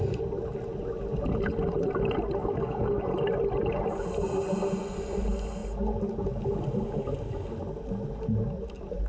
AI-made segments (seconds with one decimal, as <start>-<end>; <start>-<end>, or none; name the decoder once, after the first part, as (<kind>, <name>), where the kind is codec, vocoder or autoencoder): 2.4-3.1 (codec, DAC)